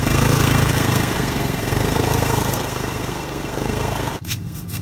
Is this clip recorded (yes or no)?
no